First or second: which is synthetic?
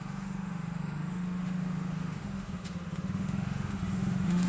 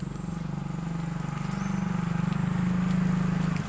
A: first